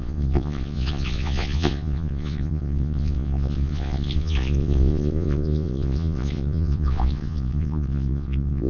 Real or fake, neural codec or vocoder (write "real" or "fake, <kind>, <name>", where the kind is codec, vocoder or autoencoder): fake, vocoder, Vocos